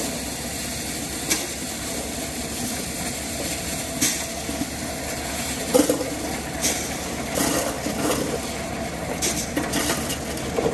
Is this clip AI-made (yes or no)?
no